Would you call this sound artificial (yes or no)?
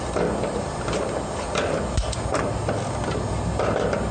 no